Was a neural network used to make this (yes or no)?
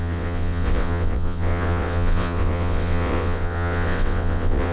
yes